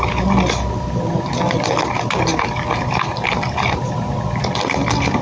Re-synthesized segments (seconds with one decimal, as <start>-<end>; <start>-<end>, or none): 2.3-4.2